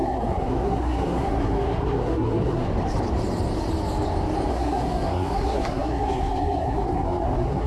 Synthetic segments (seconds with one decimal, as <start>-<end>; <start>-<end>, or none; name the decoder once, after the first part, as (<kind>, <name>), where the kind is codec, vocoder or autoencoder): 0.0-2.7 (codec, SNAC); 4.5-7.7